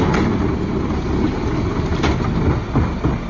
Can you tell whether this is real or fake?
real